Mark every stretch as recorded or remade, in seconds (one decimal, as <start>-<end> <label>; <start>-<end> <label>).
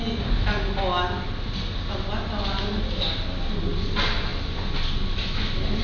0.0-5.8 recorded